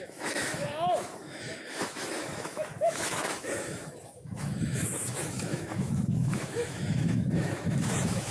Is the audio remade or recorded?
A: remade